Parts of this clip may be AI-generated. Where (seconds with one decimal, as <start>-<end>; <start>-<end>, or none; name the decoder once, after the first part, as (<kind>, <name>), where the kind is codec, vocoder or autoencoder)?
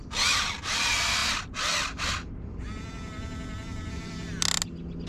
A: none